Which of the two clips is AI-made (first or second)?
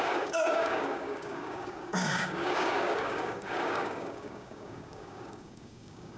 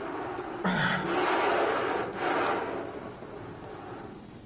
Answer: first